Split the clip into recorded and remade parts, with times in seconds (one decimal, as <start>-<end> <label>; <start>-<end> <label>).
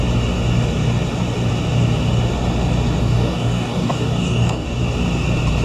0.0-3.0 recorded; 3.0-4.8 remade; 4.8-5.6 recorded